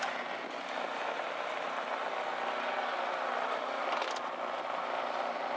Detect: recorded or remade recorded